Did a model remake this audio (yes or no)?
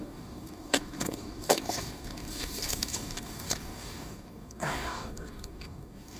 yes